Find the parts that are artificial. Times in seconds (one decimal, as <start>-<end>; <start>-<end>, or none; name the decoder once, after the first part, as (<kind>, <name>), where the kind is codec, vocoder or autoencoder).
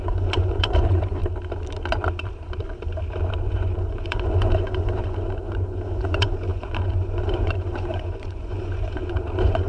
0.0-1.2 (vocoder, Vocos); 3.4-9.7